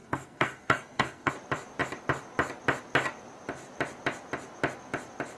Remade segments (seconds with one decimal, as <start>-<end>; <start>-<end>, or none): 0.0-1.3